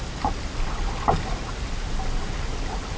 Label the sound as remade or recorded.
recorded